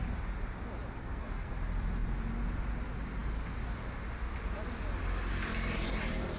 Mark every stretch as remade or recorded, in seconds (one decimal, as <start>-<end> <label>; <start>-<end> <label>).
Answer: 0.0-1.0 recorded; 1.0-1.5 remade; 1.5-6.4 recorded